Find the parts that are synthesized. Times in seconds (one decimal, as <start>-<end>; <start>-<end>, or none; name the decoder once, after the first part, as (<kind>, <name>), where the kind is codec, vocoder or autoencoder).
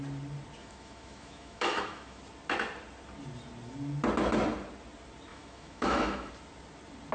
0.6-2.2 (autoencoder, DAC-VAE); 5.3-6.3